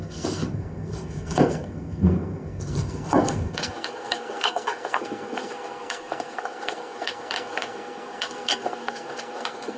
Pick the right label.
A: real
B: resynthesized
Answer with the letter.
B